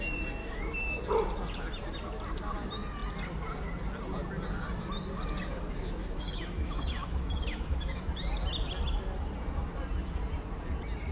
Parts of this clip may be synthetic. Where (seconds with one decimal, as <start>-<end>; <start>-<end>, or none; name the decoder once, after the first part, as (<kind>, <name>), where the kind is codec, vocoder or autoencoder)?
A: 0.4-1.0 (autoencoder, DAC-VAE); 5.5-8.0